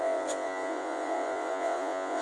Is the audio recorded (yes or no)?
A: no